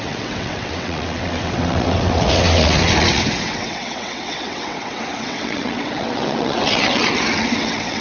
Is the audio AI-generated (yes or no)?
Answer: yes